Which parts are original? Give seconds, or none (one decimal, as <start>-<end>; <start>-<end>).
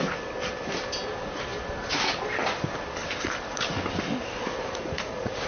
0.0-4.4